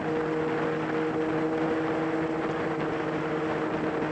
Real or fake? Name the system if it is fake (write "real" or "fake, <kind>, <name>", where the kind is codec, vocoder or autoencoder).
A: real